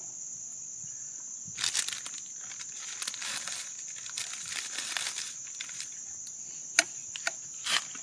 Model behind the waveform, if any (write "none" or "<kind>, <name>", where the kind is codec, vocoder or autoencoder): none